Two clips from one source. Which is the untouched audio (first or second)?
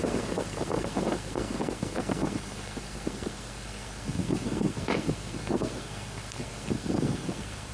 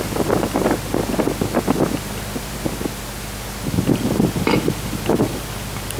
second